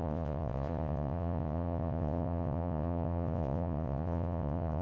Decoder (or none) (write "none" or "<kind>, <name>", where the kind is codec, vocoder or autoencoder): vocoder, Vocos